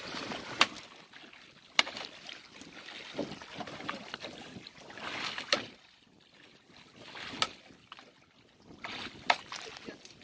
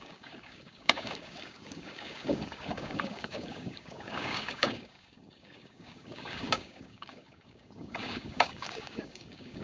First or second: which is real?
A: first